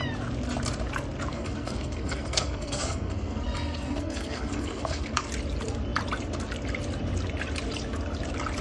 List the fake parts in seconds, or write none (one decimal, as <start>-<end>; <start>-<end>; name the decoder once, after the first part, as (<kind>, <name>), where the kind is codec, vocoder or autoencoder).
1.3-5.3 (codec, SNAC)

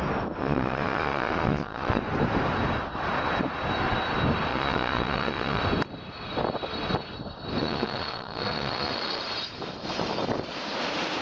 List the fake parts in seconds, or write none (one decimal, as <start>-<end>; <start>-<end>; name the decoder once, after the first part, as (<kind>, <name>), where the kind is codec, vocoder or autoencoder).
0.4-2.0 (vocoder, Vocos); 4.5-5.6; 7.6-9.2

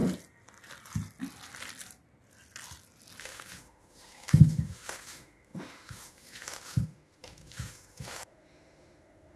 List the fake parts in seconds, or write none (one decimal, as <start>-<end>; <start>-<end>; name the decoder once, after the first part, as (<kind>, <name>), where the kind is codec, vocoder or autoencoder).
3.2-9.4 (autoencoder, DAC-VAE)

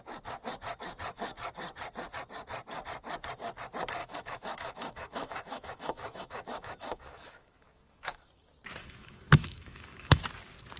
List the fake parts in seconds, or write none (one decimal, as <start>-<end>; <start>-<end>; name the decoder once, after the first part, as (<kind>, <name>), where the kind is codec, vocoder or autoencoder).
4.0-8.3 (autoencoder, DAC-VAE); 8.8-10.2

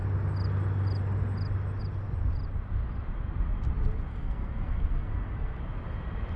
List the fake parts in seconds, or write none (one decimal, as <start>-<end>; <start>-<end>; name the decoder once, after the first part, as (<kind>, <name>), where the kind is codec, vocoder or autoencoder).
4.1-5.6 (codec, SNAC)

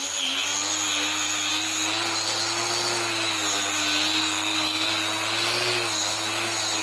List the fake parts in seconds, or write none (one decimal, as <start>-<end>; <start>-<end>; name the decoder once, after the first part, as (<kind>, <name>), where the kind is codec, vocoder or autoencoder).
4.2-4.9 (codec, SNAC)

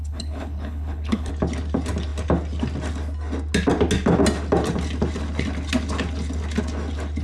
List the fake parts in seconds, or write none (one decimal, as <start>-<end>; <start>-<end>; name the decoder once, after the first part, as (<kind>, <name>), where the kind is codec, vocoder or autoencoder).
0.0-1.3 (codec, HILCodec)

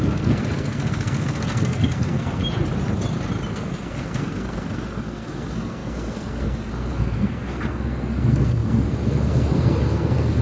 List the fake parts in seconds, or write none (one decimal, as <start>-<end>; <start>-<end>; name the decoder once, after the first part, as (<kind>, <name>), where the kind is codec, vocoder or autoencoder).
0.0-2.4 (codec, SNAC); 3.5-10.4